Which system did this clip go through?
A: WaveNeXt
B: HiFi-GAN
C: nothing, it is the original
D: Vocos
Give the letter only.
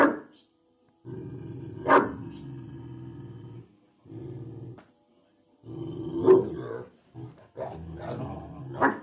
C